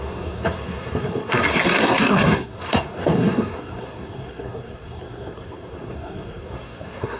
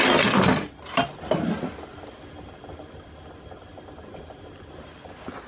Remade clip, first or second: first